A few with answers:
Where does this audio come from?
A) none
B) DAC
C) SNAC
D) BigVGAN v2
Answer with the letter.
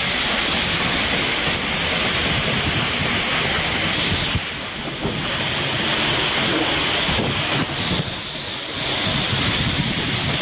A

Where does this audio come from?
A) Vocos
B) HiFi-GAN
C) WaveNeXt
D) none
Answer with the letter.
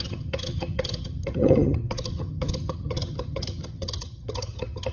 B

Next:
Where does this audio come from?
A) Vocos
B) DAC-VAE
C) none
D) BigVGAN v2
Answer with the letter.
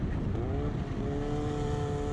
C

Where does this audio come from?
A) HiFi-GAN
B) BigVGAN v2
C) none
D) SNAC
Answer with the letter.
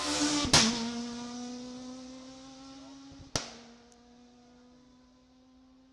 C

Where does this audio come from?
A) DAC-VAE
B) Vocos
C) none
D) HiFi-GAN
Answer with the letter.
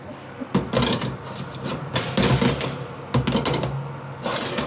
C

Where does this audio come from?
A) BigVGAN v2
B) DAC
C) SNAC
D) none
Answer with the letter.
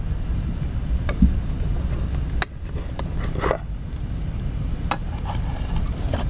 D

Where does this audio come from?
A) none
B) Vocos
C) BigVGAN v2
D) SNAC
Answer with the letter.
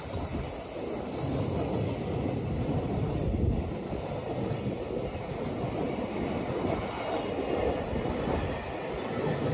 A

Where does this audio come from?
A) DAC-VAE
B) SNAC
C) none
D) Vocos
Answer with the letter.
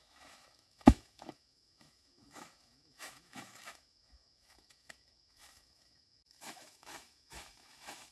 A